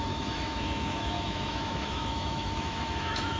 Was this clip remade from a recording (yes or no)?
yes